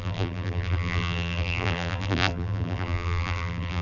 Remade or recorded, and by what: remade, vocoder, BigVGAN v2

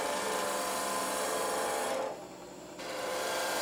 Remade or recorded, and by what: remade, vocoder, BigVGAN v2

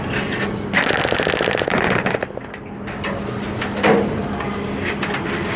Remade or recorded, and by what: remade, vocoder, BigVGAN v2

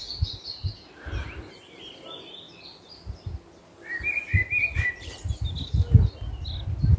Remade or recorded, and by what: recorded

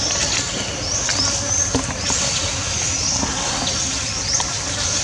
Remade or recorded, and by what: recorded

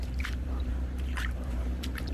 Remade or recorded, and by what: remade, vocoder, BigVGAN v2